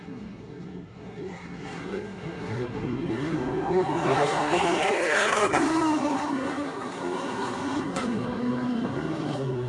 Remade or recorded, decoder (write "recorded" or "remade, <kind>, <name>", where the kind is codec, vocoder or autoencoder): remade, codec, SNAC